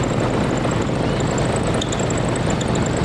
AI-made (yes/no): no